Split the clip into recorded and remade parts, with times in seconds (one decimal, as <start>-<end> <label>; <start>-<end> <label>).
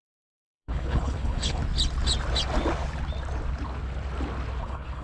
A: 0.0-1.6 remade; 1.6-4.6 recorded; 4.6-5.0 remade